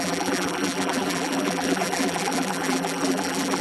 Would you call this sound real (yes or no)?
no